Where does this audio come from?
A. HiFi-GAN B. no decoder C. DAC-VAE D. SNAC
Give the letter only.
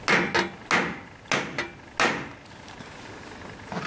B